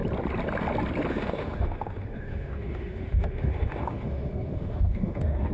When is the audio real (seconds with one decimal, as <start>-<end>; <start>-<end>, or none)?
0.0-1.1